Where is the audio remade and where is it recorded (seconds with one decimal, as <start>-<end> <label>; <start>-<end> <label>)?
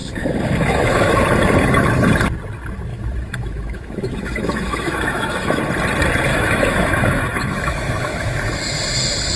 0.0-1.1 remade; 1.1-2.9 recorded; 2.9-5.6 remade; 5.6-6.3 recorded; 6.3-8.4 remade; 8.4-9.4 recorded